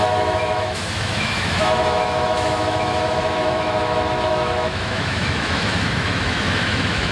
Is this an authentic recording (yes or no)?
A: no